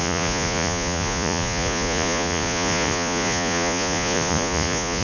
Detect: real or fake fake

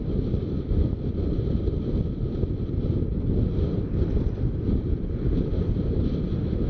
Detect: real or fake real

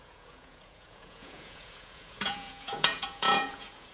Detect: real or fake fake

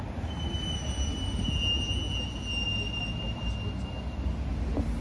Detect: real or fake real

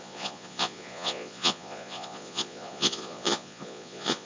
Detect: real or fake fake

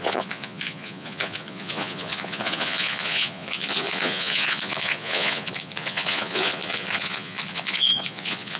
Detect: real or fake fake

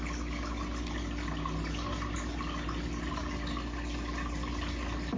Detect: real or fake real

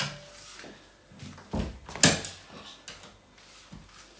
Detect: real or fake real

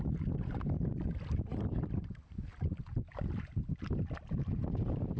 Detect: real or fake real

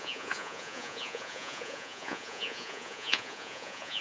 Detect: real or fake fake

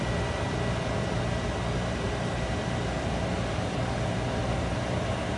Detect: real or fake real